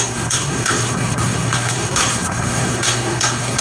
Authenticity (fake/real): fake